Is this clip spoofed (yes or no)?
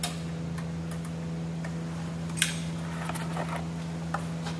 no